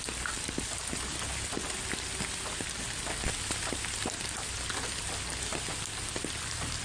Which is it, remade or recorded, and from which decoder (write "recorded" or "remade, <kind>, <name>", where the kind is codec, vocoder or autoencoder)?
recorded